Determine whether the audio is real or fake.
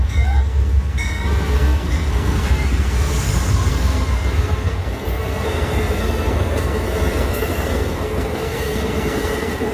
fake